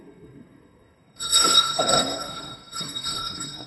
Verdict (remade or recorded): remade